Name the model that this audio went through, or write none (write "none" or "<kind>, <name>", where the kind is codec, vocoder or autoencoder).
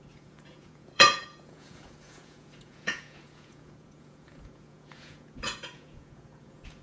vocoder, Vocos